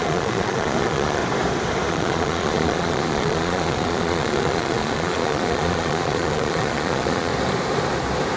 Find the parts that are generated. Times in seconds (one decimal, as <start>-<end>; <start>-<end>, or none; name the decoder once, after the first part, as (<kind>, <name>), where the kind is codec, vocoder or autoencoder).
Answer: 0.0-1.2 (vocoder, Vocos); 1.9-7.3